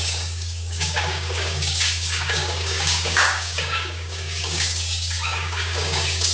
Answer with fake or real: fake